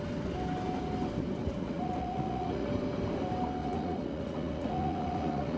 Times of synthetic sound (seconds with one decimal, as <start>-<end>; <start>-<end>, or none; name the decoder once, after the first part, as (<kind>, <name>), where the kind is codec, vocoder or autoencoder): 1.4-2.7 (vocoder, Vocos); 3.6-5.6

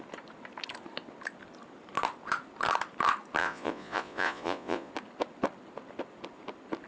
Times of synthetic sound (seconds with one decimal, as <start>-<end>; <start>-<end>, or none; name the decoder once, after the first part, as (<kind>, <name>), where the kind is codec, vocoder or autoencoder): 3.4-4.9 (vocoder, Vocos)

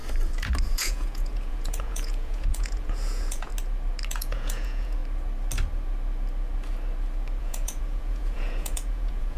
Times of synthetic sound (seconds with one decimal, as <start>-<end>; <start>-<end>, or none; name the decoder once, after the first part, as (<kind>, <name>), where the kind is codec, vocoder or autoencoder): 0.6-3.5 (vocoder, Vocos); 4.1-5.0; 7.4-9.4

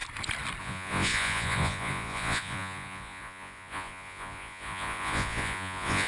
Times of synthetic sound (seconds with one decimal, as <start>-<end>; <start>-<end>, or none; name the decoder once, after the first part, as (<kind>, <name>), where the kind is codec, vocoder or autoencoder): 0.6-6.1 (vocoder, Vocos)